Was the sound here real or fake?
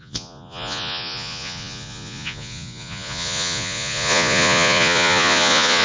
fake